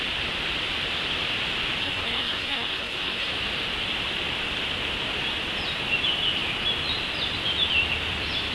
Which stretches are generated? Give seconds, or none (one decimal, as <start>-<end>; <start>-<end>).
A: 1.8-3.3